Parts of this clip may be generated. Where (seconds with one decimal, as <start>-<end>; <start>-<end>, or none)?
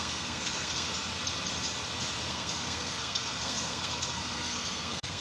0.0-0.9; 2.3-5.2